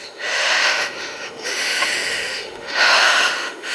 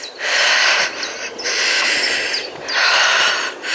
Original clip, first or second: second